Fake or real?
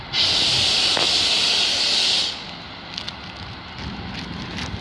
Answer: real